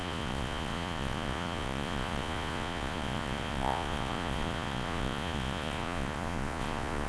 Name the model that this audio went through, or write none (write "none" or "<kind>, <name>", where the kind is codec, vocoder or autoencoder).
vocoder, Vocos